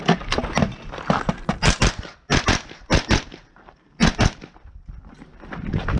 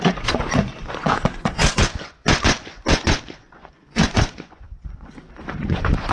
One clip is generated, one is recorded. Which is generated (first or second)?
second